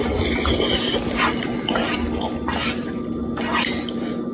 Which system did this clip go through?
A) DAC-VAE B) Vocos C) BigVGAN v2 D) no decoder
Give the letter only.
D